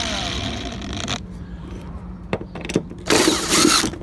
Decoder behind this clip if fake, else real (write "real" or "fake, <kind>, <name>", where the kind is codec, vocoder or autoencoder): fake, vocoder, BigVGAN v2